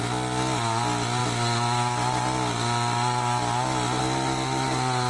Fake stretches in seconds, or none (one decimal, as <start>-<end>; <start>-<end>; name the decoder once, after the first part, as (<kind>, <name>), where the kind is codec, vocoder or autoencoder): none